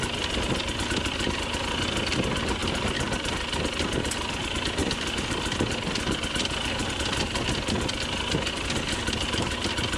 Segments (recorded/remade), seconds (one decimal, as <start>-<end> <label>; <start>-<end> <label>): 0.0-10.0 recorded